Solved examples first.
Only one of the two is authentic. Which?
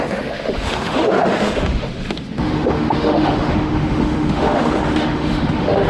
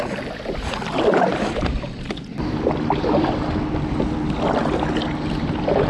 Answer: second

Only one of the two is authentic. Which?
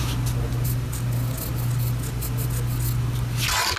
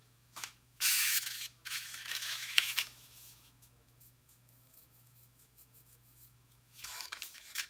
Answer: first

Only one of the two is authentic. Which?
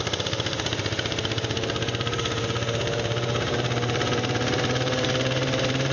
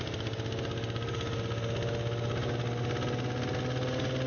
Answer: second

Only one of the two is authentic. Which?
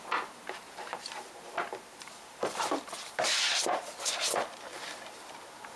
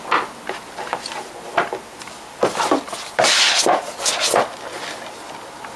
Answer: second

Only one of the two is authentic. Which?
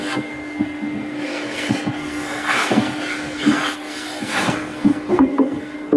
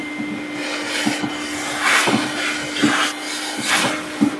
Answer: second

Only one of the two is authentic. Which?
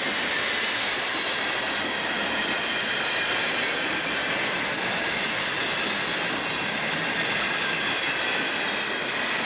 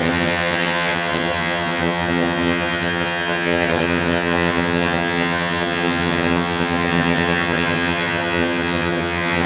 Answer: first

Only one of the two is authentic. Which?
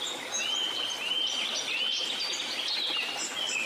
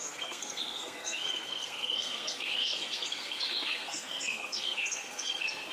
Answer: first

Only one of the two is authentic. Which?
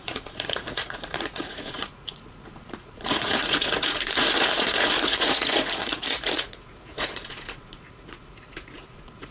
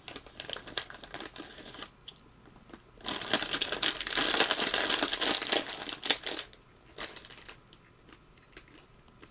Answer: second